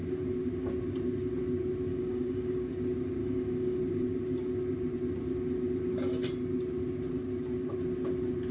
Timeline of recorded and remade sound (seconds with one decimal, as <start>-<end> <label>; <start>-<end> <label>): 0.0-1.9 recorded; 1.9-2.7 remade; 2.7-3.2 recorded; 3.2-3.8 remade; 3.8-8.5 recorded